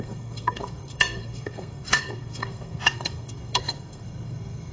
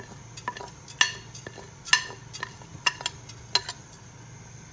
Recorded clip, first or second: second